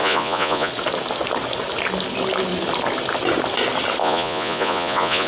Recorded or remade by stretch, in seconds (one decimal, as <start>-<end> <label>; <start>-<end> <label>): 0.0-0.7 remade; 0.7-4.0 recorded; 4.0-5.3 remade